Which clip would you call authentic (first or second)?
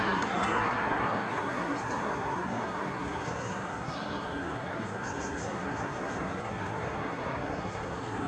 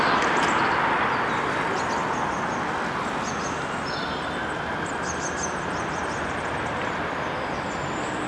second